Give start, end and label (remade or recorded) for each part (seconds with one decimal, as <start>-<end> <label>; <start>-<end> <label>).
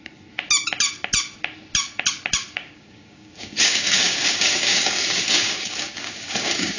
0.0-2.5 recorded; 2.5-6.8 remade